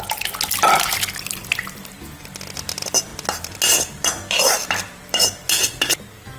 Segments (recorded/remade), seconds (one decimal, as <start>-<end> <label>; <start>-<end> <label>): 0.0-6.4 recorded